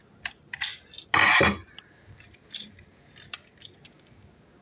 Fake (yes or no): no